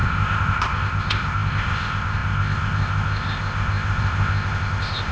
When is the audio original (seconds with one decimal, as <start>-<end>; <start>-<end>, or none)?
none